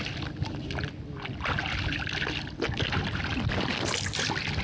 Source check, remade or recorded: recorded